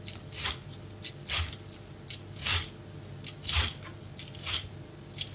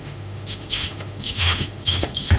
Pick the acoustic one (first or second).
first